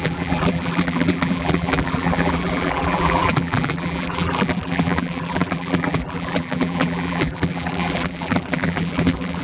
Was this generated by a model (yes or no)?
yes